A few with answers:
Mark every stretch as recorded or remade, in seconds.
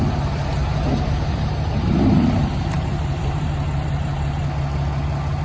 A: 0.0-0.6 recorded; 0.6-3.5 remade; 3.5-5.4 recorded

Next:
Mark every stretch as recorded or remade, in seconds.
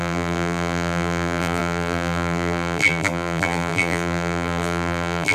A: 0.0-5.3 remade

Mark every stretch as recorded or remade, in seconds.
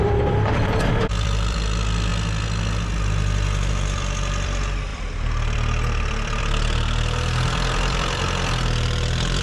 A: 0.0-2.1 remade; 2.1-3.7 recorded; 3.7-9.4 remade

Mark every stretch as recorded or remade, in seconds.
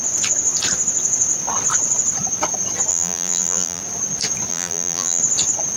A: 0.0-2.9 recorded; 2.9-3.8 remade; 3.8-4.5 recorded; 4.5-5.2 remade; 5.2-5.8 recorded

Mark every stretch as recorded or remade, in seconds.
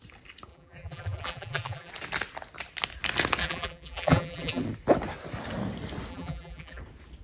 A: 0.0-0.5 recorded; 0.5-1.9 remade; 1.9-3.4 recorded; 3.4-4.6 remade; 4.6-6.1 recorded; 6.1-6.8 remade; 6.8-7.2 recorded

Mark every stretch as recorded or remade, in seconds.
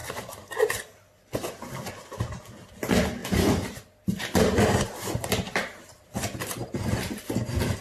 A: 0.0-3.2 recorded; 3.2-7.2 remade; 7.2-7.8 recorded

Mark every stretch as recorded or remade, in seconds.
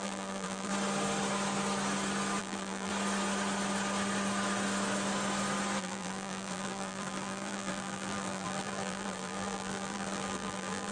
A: 0.0-0.7 remade; 0.7-2.4 recorded; 2.4-2.9 remade; 2.9-5.8 recorded; 5.8-10.9 remade